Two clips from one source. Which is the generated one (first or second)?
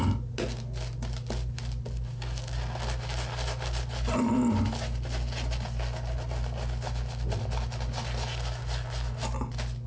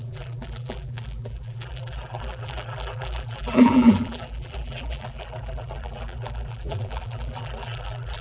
second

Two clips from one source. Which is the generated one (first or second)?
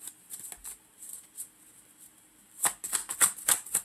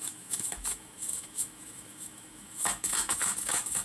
second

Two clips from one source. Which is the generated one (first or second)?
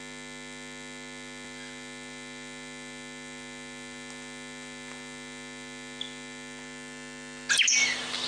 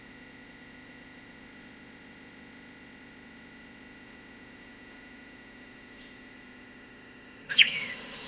second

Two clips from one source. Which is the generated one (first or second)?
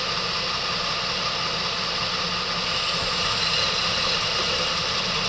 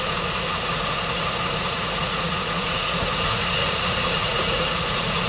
second